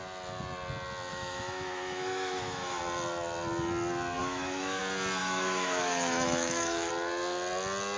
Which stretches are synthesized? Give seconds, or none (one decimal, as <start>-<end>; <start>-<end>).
1.1-2.8; 4.2-4.8; 5.2-6.9

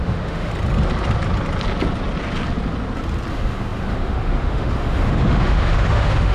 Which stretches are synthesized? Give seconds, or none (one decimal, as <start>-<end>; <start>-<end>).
0.0-0.5; 3.3-6.3

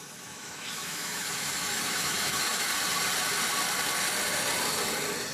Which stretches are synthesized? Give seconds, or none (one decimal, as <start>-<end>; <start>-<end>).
0.0-2.7

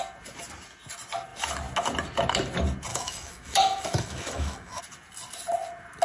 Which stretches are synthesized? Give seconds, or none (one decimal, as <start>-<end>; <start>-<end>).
2.9-4.8

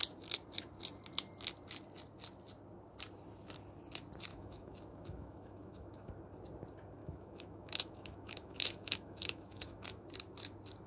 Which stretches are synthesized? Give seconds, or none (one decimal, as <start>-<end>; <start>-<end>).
4.3-6.1; 7.0-10.1

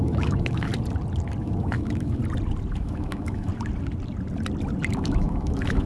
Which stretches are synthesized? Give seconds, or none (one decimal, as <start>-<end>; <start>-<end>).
0.0-0.7; 1.4-2.2; 2.7-3.5; 4.9-5.9

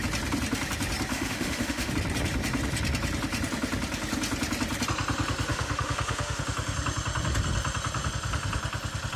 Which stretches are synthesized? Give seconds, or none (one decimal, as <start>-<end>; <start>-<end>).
1.1-1.9; 5.5-6.4